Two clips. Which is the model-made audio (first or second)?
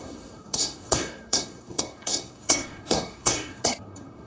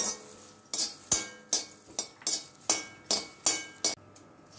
first